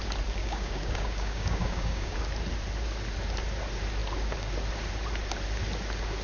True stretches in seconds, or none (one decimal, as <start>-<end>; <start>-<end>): 0.0-0.4; 2.2-6.2